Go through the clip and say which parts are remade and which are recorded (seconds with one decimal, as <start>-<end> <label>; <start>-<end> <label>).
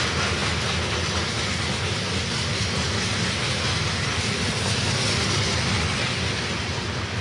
0.0-7.2 recorded